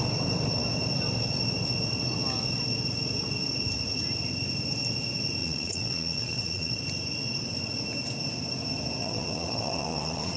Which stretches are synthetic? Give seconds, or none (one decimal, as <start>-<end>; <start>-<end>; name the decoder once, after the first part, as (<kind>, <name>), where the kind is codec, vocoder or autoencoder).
5.4-6.8 (vocoder, Vocos); 9.0-10.4